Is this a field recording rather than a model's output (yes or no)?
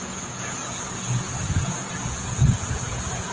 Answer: no